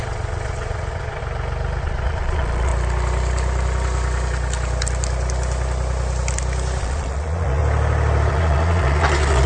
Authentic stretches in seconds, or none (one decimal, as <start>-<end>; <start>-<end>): 1.2-1.8; 2.7-6.8; 7.6-8.3